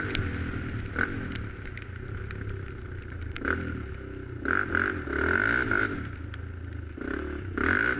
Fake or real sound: real